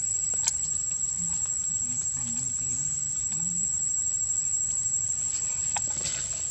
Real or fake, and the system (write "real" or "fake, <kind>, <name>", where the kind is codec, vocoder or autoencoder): real